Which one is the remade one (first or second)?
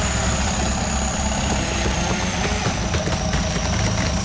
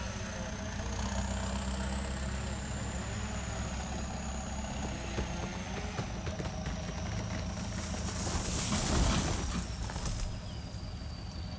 first